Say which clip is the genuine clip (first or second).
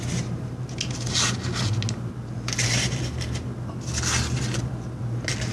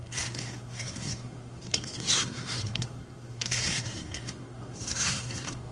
first